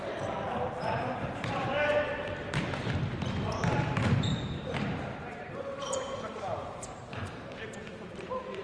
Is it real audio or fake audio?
fake